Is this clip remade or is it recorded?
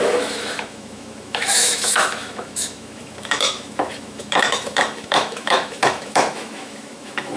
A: remade